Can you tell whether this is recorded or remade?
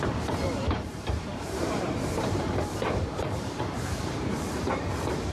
remade